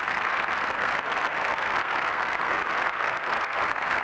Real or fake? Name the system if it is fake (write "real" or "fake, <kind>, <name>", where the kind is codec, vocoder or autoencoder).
fake, codec, SNAC